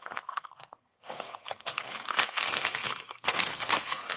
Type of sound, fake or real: fake